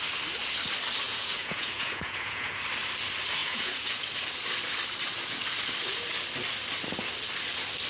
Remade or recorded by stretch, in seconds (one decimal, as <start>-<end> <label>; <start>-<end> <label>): 0.0-1.1 recorded; 1.1-2.6 remade; 2.6-3.4 recorded; 3.4-4.1 remade; 4.1-7.9 recorded